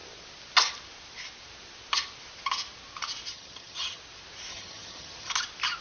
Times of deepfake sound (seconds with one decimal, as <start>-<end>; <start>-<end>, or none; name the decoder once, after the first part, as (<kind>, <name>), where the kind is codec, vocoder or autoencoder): 3.3-4.0 (vocoder, HiFi-GAN); 4.5-5.3